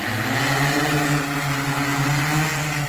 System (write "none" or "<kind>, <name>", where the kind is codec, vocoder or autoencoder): none